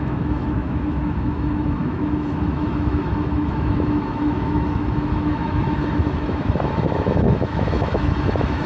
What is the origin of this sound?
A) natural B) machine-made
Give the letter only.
B